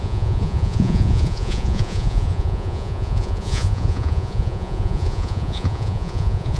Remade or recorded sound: remade